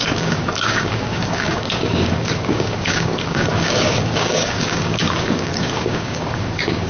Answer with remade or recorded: remade